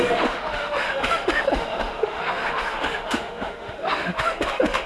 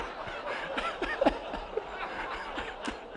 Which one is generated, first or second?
first